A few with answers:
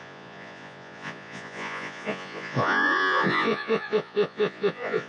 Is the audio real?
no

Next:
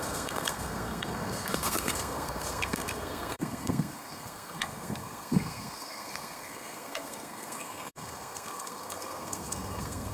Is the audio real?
no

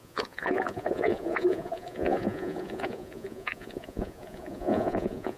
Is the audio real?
no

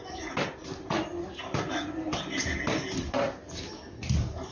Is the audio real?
yes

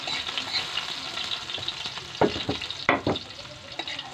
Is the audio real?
yes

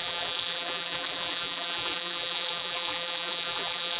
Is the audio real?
no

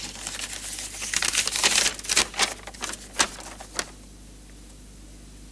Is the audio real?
yes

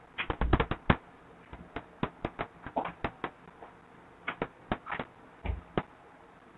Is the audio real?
yes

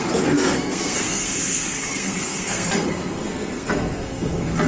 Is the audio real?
no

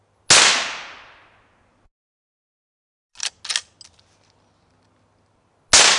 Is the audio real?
yes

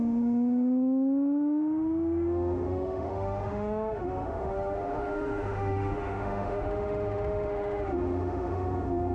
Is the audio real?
no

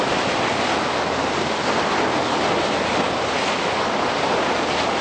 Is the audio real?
yes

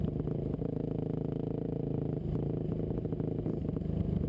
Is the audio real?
yes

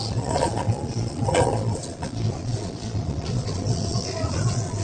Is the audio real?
no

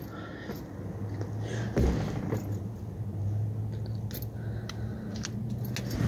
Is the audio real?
yes